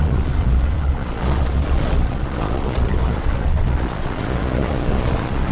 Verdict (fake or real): fake